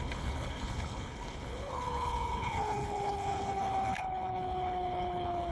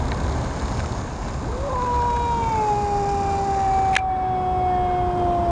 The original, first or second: second